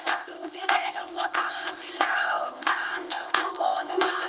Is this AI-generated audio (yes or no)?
yes